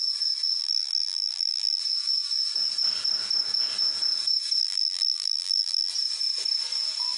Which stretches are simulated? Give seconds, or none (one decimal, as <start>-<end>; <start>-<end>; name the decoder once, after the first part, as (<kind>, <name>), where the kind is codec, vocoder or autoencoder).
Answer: 0.6-1.8 (vocoder, BigVGAN v2); 4.6-5.9